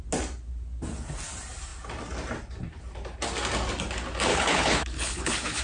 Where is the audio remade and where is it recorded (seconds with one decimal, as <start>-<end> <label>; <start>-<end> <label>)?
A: 0.0-4.3 recorded; 4.3-5.6 remade

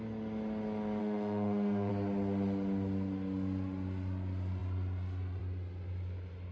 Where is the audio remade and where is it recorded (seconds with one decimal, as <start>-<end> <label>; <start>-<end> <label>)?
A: 0.0-1.0 recorded; 1.0-1.9 remade; 1.9-6.5 recorded

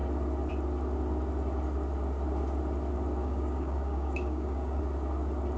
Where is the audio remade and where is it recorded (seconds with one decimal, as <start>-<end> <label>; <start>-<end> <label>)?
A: 0.0-3.2 recorded; 3.2-4.8 remade; 4.8-5.6 recorded

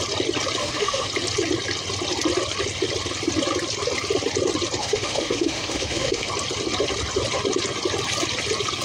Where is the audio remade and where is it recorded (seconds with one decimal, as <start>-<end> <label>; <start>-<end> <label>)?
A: 0.0-0.6 recorded; 0.6-1.1 remade; 1.1-4.8 recorded; 4.8-6.3 remade; 6.3-8.8 recorded

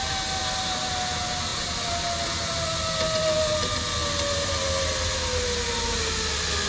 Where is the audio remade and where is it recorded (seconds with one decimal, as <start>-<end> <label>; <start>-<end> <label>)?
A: 0.0-6.7 recorded

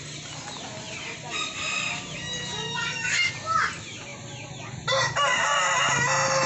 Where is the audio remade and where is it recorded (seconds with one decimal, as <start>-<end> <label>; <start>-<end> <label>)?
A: 0.0-2.8 recorded; 2.8-3.3 remade; 3.3-6.5 recorded

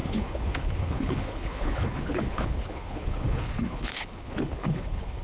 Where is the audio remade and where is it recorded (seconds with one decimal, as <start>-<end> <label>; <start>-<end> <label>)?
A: 0.0-5.2 remade